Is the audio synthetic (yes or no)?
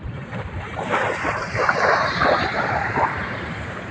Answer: yes